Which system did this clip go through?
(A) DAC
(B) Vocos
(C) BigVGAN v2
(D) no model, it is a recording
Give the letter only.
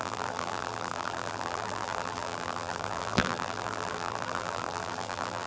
C